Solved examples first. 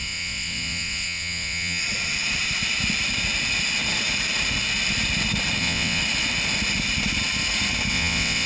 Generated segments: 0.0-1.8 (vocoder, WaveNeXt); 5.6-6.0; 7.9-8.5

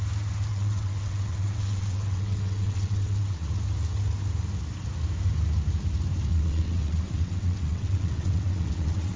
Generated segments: 0.5-3.5 (vocoder, WaveNeXt); 6.3-9.2

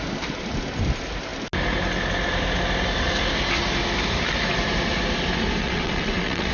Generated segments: 5.6-6.5 (vocoder, WaveNeXt)

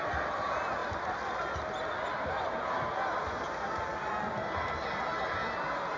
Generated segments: none

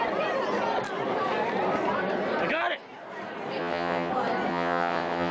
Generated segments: 3.6-4.1 (vocoder, WaveNeXt); 4.5-5.3

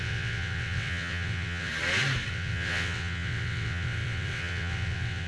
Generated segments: 0.0-1.7 (vocoder, WaveNeXt); 2.3-5.3